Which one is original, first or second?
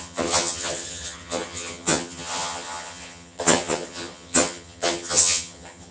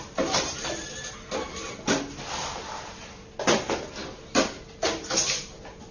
second